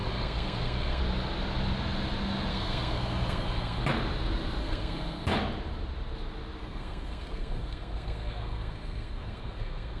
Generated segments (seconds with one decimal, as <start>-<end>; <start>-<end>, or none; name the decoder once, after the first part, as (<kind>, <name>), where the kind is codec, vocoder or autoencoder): 0.0-1.0 (codec, SNAC); 2.5-3.8; 4.6-5.3; 6.6-10.0